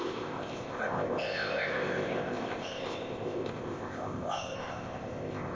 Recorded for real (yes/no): no